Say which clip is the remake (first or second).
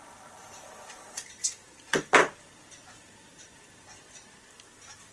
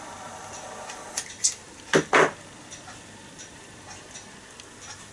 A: first